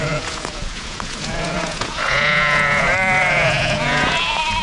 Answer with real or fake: fake